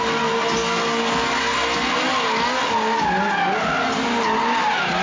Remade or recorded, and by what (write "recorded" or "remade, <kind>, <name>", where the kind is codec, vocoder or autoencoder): recorded